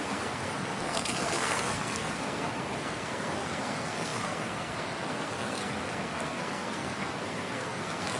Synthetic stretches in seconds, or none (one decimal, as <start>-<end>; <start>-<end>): 0.0-8.2